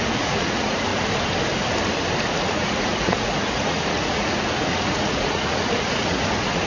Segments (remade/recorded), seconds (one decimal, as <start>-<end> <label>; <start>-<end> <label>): 0.0-0.9 remade; 0.9-2.4 recorded; 2.4-6.7 remade

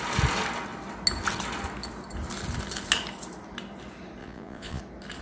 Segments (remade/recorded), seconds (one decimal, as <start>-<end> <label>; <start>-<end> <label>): 0.0-4.2 recorded; 4.2-4.8 remade; 4.8-5.2 recorded

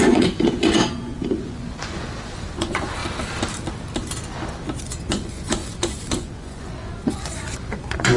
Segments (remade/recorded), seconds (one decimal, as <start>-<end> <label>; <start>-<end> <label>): 0.0-3.0 remade; 3.0-4.8 recorded; 4.8-8.2 remade

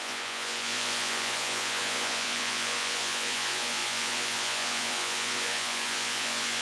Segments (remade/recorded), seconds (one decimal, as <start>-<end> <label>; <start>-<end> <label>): 0.0-6.6 remade